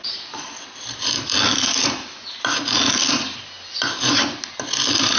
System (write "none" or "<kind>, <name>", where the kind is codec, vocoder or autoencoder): none